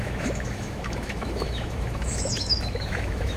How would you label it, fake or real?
fake